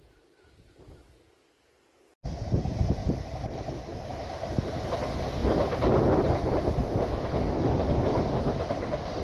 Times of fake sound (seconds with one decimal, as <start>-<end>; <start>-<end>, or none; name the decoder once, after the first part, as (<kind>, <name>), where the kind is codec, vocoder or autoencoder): 3.0-3.8 (autoencoder, DAC-VAE)